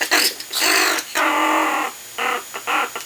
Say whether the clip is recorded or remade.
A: recorded